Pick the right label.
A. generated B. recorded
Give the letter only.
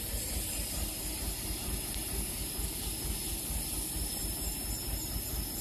B